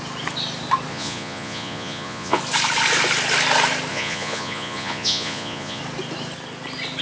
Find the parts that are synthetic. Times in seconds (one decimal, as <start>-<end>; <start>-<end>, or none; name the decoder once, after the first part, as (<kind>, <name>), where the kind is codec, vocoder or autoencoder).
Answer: 0.9-2.4 (vocoder, Vocos); 3.9-5.8